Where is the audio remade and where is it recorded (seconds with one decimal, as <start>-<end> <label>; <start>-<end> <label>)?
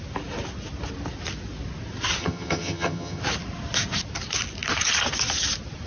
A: 0.0-2.2 recorded; 2.2-3.2 remade; 3.2-5.9 recorded